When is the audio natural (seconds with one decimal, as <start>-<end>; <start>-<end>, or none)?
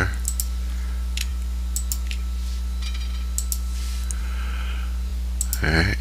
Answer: 0.0-6.0